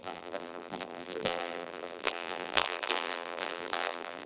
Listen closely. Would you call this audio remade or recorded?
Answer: remade